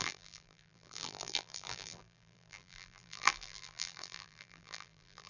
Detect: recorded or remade remade